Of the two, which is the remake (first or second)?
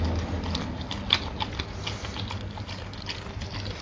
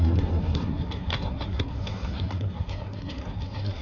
second